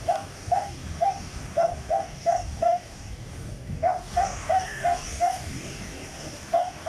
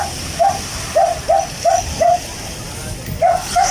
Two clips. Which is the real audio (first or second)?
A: second